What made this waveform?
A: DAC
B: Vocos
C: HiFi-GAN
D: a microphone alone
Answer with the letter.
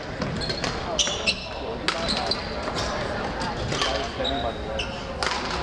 D